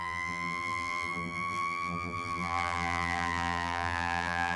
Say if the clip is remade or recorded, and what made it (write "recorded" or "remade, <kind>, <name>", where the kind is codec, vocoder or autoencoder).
remade, vocoder, BigVGAN v2